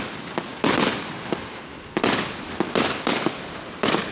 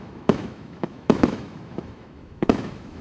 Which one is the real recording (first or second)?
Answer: first